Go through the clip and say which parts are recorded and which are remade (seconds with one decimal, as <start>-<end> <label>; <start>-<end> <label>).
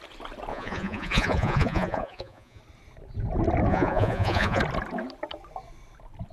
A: 0.0-0.5 recorded; 0.5-2.6 remade; 2.6-3.7 recorded; 3.7-4.6 remade; 4.6-6.3 recorded